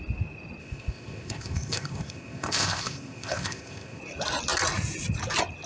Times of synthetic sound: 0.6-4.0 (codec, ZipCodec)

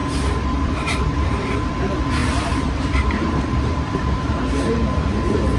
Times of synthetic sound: 0.0-1.7 (vocoder, BigVGAN v2); 2.2-4.6

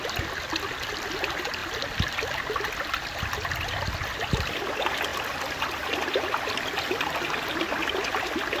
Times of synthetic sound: 5.1-7.1 (vocoder, BigVGAN v2)

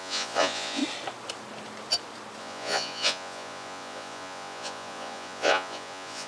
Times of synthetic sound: 0.0-0.8 (vocoder, Vocos); 2.4-6.3

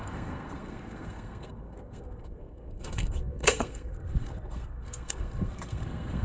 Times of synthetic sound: 0.0-6.2 (codec, SNAC)

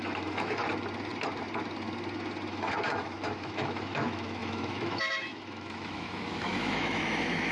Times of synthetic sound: 0.0-0.6 (autoencoder, DAC-VAE); 2.5-7.5

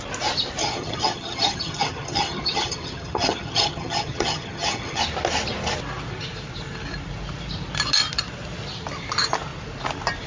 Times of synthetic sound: 0.6-5.0 (vocoder, HiFi-GAN)